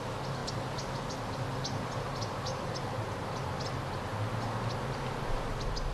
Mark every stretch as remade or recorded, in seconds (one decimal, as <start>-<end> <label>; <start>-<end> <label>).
0.0-5.9 recorded